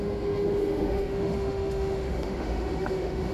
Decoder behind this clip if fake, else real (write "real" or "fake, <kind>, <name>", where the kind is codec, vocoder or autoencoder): fake, autoencoder, DAC-VAE